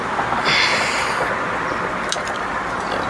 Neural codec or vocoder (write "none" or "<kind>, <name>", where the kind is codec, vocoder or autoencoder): none